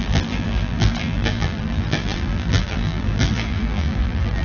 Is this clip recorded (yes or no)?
no